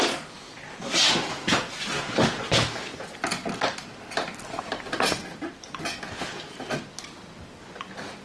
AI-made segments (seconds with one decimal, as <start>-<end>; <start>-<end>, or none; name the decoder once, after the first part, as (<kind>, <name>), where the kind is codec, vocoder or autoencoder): none